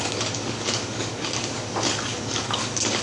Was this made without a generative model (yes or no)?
no